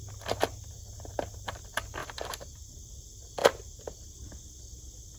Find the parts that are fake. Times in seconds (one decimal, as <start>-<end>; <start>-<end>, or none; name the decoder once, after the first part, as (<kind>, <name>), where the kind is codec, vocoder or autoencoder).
2.0-2.6 (vocoder, BigVGAN v2)